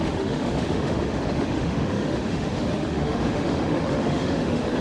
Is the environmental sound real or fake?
fake